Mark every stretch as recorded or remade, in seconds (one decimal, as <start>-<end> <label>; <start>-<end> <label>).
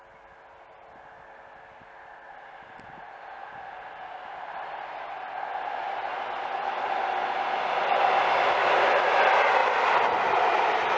0.0-11.0 recorded